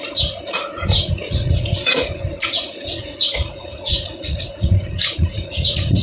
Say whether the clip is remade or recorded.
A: remade